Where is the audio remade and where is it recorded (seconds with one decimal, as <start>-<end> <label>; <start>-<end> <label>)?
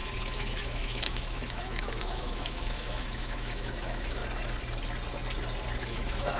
0.0-4.2 remade; 4.2-5.8 recorded; 5.8-6.4 remade